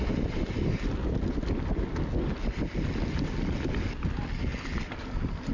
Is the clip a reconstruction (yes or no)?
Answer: no